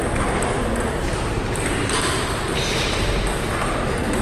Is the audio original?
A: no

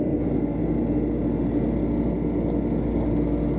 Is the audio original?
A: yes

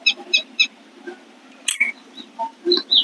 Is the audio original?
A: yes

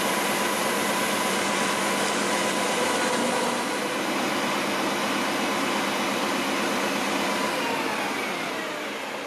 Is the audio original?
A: yes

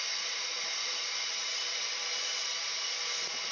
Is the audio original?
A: yes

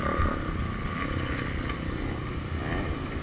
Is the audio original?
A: yes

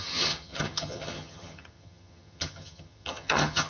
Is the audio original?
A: no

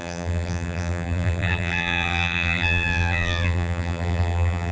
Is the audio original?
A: no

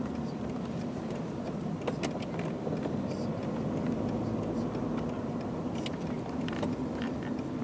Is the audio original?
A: yes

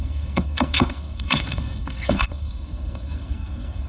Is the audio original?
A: no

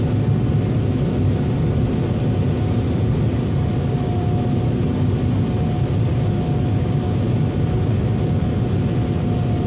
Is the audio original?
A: yes